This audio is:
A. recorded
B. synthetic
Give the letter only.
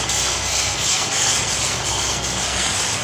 B